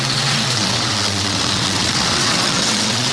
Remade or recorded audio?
remade